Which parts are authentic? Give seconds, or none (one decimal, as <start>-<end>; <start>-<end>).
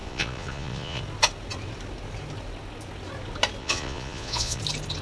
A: 1.0-3.6; 4.6-5.0